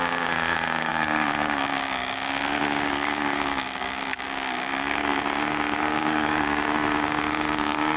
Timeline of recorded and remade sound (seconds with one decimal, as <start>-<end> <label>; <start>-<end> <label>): 0.0-8.0 remade